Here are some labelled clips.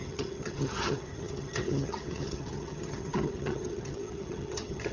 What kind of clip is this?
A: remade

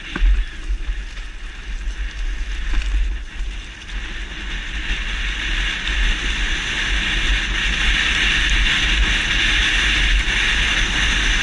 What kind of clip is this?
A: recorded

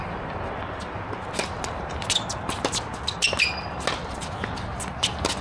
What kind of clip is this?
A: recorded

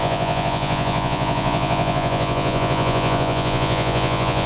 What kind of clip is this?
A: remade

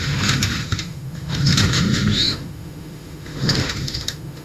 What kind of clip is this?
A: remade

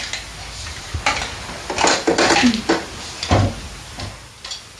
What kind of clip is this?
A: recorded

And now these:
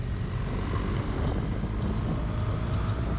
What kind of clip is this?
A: recorded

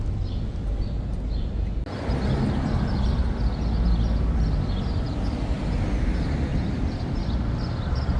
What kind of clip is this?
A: recorded